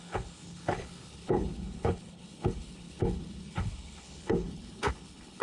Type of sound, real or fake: fake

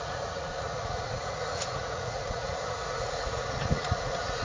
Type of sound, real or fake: fake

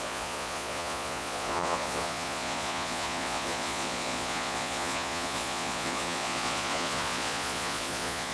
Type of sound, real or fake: fake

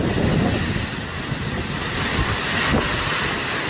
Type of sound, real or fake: real